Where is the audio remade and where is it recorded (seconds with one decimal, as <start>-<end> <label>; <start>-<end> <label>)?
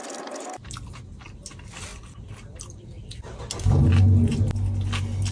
0.0-5.3 recorded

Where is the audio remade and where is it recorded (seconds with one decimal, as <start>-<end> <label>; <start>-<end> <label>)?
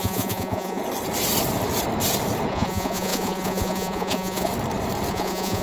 0.0-0.8 remade; 0.8-2.5 recorded; 2.5-4.5 remade; 4.5-5.1 recorded; 5.1-5.6 remade